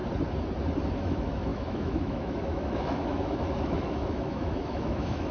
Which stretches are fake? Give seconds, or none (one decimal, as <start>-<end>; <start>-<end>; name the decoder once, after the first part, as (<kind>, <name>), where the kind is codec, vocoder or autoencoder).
0.9-5.3 (autoencoder, DAC-VAE)